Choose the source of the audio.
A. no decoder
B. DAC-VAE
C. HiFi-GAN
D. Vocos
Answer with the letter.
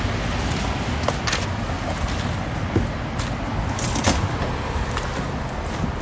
A